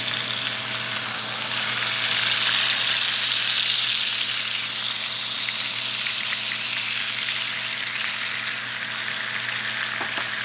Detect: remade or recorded recorded